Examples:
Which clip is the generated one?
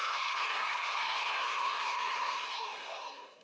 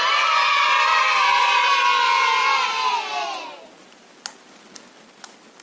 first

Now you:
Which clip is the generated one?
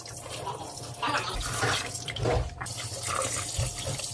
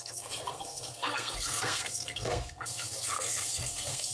second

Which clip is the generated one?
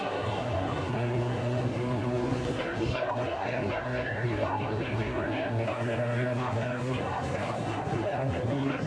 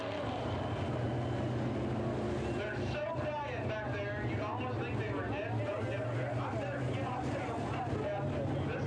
first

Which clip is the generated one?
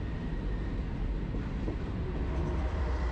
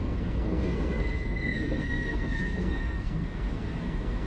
second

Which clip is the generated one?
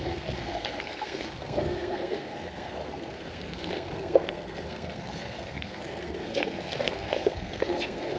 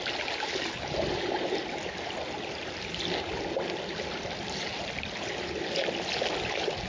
first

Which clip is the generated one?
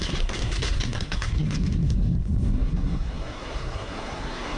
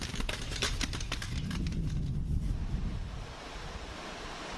first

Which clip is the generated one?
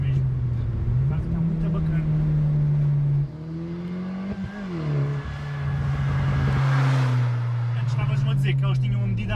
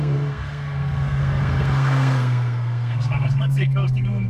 second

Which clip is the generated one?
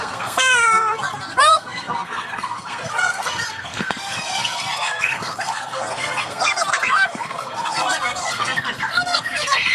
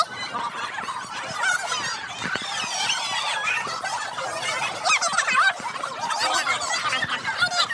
first